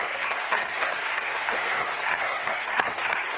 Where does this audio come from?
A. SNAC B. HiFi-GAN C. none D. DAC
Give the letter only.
A